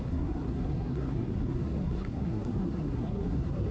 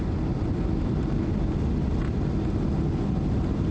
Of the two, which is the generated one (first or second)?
first